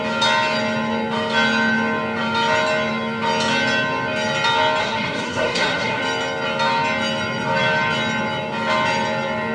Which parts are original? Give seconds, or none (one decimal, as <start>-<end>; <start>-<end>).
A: 0.0-4.8; 6.0-9.5